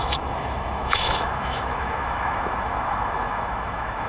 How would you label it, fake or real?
fake